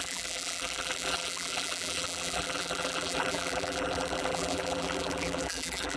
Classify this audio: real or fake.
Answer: fake